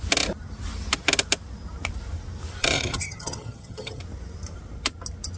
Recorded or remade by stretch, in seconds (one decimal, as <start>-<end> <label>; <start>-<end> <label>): 0.0-2.6 recorded; 2.6-4.0 remade; 4.0-5.4 recorded